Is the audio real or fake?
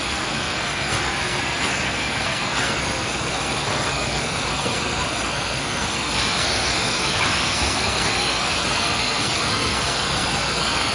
fake